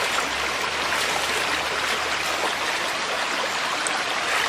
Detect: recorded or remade recorded